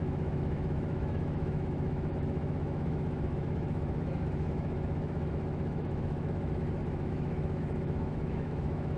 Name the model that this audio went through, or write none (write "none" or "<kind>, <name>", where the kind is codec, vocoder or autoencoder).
autoencoder, DAC-VAE